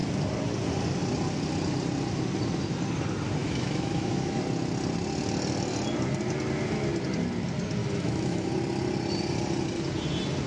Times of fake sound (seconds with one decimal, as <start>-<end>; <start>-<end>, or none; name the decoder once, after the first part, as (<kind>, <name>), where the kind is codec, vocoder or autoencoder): 3.4-4.4 (autoencoder, DAC-VAE); 7.8-8.5